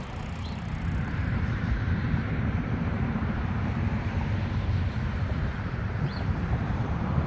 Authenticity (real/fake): fake